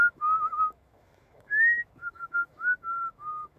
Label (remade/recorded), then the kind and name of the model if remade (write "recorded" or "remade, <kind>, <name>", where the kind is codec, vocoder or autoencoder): remade, autoencoder, DAC-VAE